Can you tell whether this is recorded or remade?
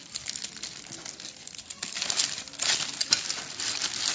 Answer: recorded